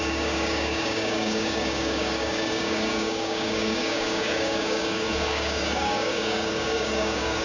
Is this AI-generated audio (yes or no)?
yes